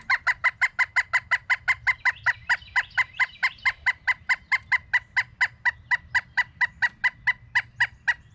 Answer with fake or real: real